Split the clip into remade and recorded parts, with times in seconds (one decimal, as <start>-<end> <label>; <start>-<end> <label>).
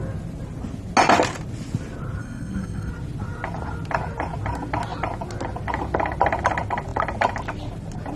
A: 0.0-2.2 recorded; 2.2-2.9 remade; 2.9-8.2 recorded